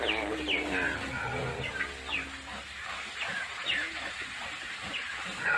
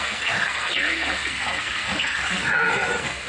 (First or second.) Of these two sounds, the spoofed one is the second